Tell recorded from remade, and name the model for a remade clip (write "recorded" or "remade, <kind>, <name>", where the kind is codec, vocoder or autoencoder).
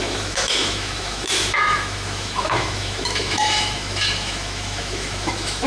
remade, autoencoder, DAC-VAE